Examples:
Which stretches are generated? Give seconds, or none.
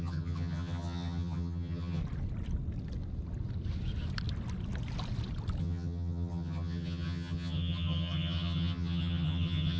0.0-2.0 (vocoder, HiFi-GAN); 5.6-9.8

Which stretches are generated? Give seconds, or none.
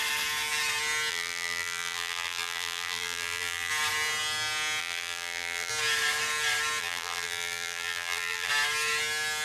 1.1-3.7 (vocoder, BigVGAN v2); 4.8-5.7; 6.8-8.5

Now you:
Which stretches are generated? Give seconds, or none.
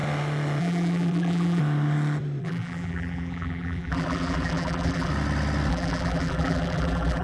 0.6-1.6 (vocoder, BigVGAN v2); 2.4-5.1; 5.7-7.2